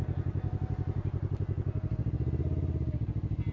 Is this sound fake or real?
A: real